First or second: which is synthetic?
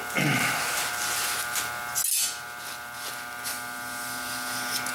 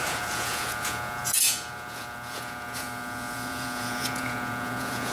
second